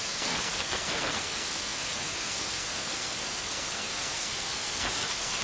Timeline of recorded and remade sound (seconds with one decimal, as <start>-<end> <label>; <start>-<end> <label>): 0.0-5.4 remade